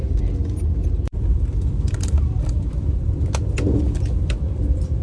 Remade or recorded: remade